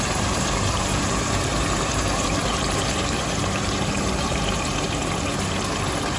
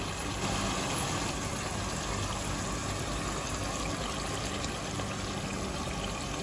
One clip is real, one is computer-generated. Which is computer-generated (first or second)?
first